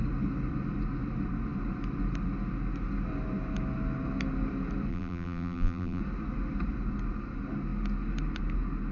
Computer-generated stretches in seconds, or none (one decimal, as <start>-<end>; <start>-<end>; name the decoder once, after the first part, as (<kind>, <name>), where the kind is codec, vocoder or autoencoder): 4.9-6.0 (vocoder, BigVGAN v2)